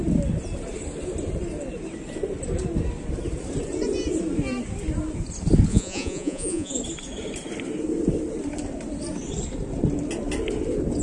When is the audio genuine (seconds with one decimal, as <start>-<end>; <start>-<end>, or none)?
0.0-5.7; 6.7-11.0